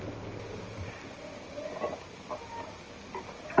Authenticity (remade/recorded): recorded